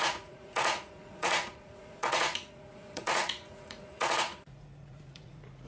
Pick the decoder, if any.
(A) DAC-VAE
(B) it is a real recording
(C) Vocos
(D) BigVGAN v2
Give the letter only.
C